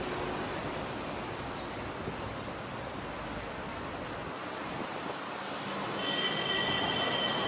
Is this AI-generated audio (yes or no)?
no